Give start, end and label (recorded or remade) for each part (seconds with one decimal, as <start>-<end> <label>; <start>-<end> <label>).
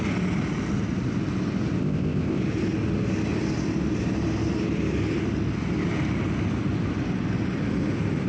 0.0-1.8 recorded; 1.8-2.4 remade; 2.4-8.3 recorded